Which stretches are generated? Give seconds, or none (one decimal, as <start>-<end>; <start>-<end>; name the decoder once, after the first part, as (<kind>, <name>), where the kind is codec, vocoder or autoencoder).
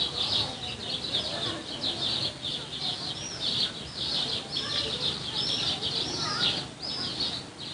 none